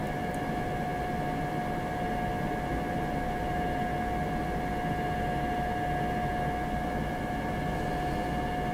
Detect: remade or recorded recorded